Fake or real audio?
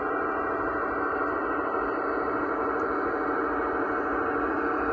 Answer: real